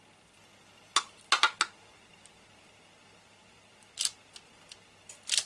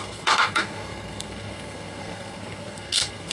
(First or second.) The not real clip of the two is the second